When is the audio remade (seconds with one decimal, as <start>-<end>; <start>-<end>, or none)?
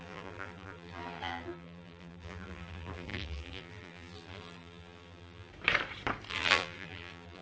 0.0-5.5; 6.3-7.4